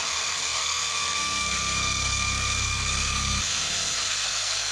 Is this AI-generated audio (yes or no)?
yes